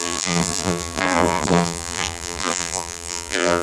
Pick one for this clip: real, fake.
fake